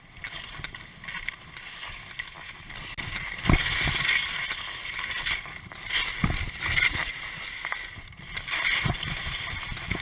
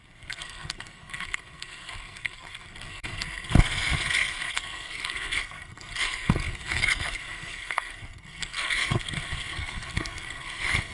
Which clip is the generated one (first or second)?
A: second